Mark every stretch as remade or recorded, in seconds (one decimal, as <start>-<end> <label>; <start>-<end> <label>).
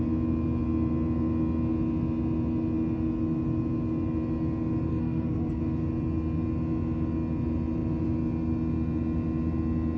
0.0-4.9 recorded; 4.9-5.6 remade; 5.6-10.0 recorded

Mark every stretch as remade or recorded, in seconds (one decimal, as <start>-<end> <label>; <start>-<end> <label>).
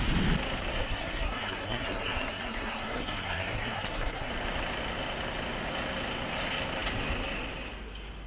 0.0-0.8 recorded; 0.8-4.3 remade; 4.3-8.3 recorded